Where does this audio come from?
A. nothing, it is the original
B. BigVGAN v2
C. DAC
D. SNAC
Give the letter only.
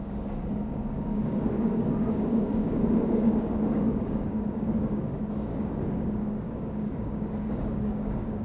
C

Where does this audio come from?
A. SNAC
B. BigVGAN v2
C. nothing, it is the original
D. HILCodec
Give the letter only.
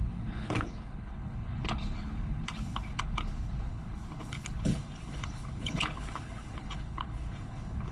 D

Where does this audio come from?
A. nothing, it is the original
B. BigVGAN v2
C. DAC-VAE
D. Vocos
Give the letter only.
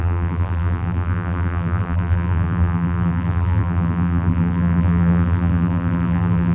B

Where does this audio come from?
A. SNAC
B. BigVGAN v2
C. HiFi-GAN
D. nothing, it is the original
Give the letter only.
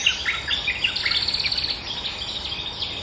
D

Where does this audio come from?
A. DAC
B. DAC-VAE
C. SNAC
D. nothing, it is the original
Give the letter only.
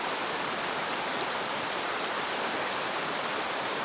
D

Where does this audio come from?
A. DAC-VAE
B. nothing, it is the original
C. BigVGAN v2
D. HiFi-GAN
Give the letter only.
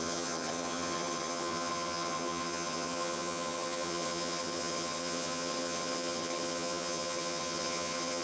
D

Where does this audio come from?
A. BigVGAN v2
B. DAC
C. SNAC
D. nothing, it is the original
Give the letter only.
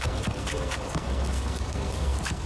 C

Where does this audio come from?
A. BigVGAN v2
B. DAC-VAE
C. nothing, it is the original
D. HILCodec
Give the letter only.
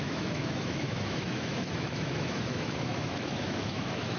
B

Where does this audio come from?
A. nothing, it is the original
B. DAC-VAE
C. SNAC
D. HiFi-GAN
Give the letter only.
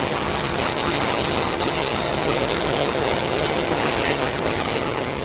D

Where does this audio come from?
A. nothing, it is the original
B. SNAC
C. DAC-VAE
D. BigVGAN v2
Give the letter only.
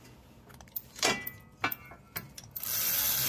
A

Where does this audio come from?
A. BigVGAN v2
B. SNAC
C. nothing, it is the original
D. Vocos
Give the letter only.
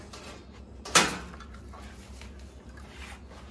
C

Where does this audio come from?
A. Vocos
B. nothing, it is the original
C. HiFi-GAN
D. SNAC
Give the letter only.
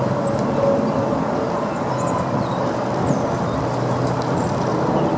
B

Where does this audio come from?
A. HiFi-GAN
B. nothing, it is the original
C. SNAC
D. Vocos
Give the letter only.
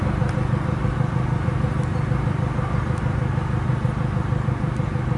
B